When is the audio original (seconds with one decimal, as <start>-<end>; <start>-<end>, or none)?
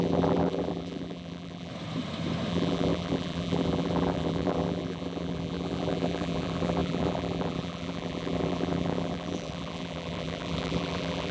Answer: 1.7-2.5